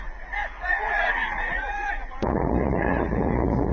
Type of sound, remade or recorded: remade